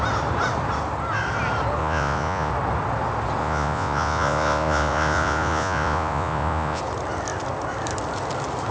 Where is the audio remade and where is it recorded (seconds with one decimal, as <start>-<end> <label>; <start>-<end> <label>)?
0.0-1.8 recorded; 1.8-2.5 remade; 2.5-3.4 recorded; 3.4-6.8 remade; 6.8-8.7 recorded